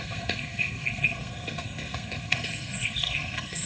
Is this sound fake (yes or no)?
yes